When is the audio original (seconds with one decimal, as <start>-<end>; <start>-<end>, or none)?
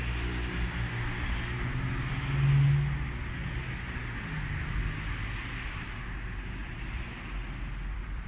0.0-6.6